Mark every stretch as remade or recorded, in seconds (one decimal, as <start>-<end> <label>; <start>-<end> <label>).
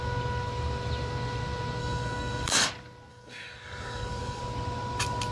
0.0-1.8 recorded; 1.8-2.7 remade; 2.7-3.1 recorded; 3.1-4.4 remade; 4.4-5.3 recorded